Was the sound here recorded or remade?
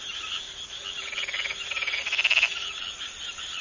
remade